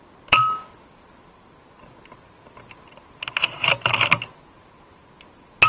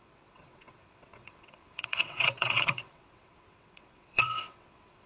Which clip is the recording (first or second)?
first